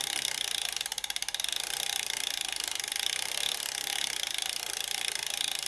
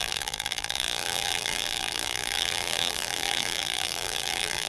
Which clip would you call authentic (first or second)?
first